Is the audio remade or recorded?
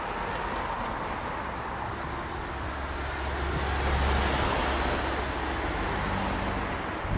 recorded